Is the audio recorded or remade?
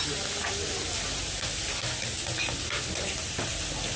recorded